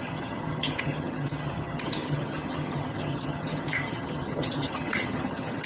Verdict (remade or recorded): remade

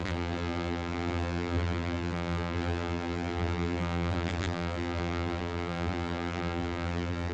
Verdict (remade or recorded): remade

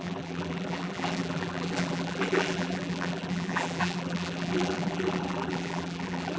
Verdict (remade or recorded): remade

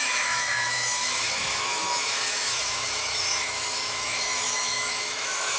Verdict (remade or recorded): remade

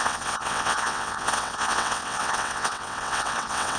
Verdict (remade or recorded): remade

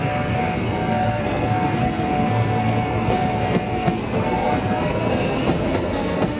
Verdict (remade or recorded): remade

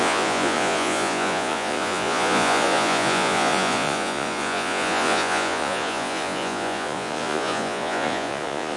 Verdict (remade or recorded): remade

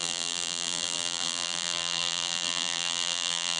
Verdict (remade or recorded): remade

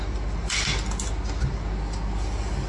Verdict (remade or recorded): recorded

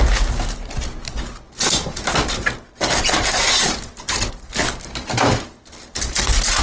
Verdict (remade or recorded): recorded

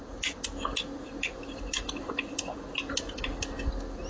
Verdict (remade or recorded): recorded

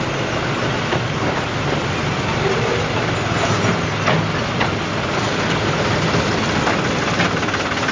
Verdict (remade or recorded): recorded